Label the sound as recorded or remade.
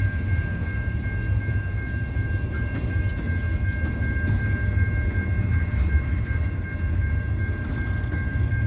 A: recorded